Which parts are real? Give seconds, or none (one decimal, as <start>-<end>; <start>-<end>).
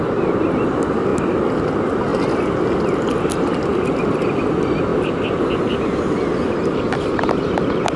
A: 0.0-8.0